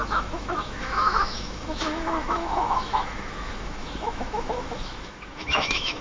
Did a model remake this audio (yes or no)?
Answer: yes